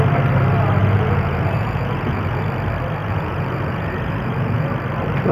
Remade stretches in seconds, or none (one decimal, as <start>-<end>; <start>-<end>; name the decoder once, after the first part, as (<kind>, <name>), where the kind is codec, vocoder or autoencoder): 0.8-2.4 (vocoder, Vocos); 3.0-4.7